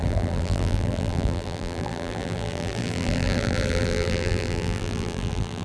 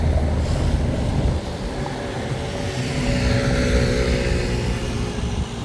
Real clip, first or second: second